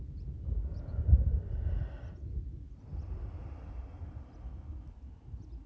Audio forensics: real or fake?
real